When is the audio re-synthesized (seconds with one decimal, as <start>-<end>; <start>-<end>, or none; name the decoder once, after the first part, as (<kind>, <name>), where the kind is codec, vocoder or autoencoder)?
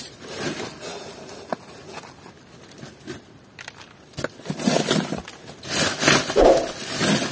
none